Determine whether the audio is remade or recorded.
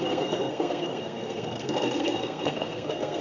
remade